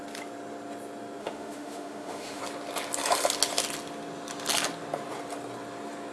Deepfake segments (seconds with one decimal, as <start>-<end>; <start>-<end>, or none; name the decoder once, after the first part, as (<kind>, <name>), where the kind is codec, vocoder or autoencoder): 1.2-2.4 (autoencoder, DAC-VAE)